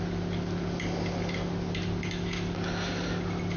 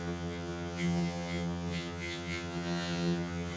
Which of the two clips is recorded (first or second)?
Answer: first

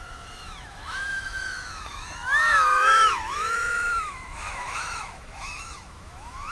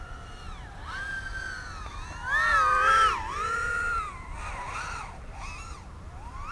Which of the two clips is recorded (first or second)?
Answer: second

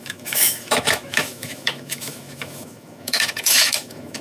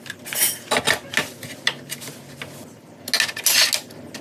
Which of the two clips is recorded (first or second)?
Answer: second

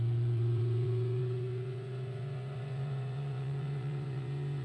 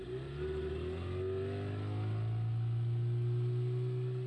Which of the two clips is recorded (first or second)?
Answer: second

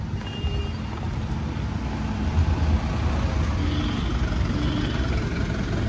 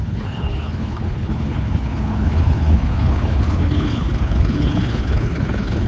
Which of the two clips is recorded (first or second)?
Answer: first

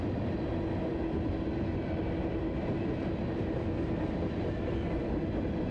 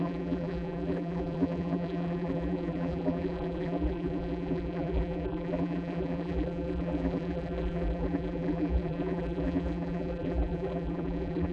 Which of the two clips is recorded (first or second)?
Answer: first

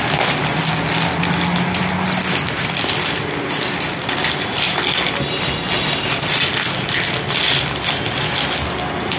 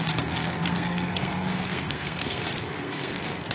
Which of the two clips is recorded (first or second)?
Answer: first